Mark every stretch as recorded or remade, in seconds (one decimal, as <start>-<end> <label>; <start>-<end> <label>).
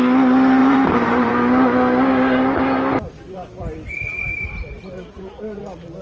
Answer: 0.0-0.6 recorded; 0.6-1.3 remade; 1.3-4.3 recorded; 4.3-5.6 remade; 5.6-6.0 recorded